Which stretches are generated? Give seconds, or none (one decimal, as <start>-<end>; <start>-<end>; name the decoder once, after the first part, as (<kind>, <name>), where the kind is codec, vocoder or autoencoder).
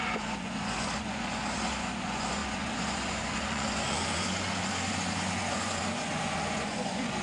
0.0-7.2 (vocoder, Vocos)